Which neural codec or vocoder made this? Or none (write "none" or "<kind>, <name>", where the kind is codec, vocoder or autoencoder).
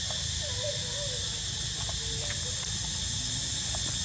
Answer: none